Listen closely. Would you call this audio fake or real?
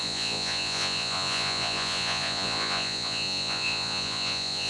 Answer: fake